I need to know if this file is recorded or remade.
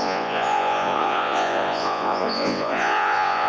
remade